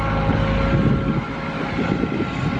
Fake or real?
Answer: real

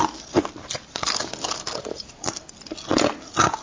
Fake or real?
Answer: real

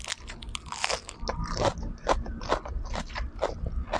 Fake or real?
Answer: real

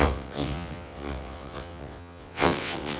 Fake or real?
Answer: fake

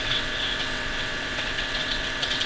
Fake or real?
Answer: fake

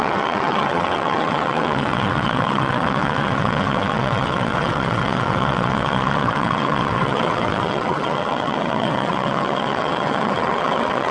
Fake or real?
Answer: fake